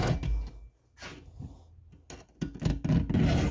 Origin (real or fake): real